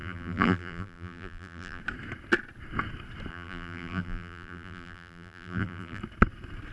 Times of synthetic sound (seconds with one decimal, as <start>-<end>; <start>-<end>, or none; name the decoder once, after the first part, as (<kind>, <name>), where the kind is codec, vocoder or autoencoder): 0.0-1.8 (vocoder, BigVGAN v2); 3.3-6.0